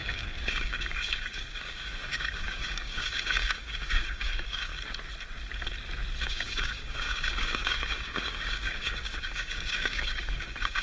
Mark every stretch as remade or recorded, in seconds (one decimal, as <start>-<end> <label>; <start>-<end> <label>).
0.0-4.7 remade; 4.7-6.2 recorded; 6.2-10.8 remade